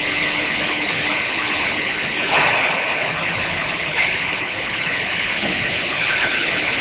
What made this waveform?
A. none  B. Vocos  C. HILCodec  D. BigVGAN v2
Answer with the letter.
C